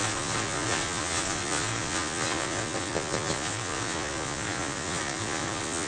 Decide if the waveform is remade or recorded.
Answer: remade